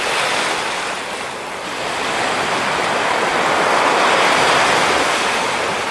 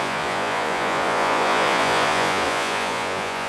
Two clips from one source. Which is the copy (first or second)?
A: second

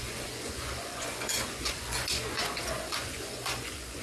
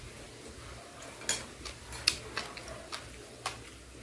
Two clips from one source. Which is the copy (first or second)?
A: first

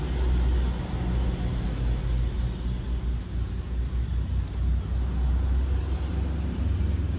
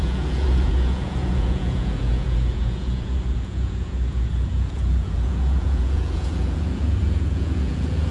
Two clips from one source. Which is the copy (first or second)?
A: second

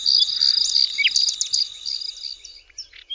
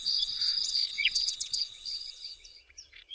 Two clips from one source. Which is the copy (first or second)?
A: second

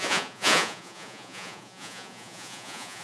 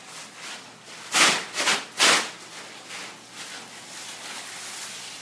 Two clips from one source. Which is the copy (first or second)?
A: first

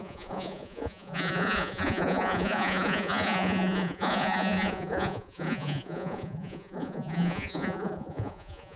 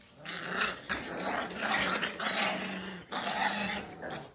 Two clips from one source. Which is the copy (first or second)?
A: first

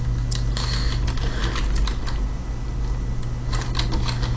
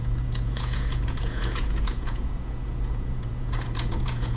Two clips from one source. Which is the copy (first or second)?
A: second